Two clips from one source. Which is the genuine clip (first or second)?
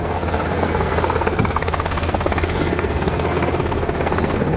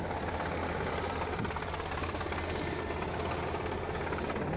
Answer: second